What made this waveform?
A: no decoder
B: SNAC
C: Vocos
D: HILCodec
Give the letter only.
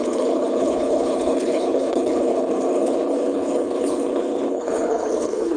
D